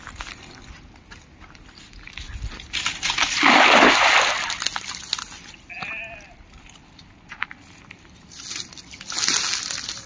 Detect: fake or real real